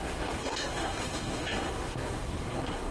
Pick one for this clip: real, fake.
fake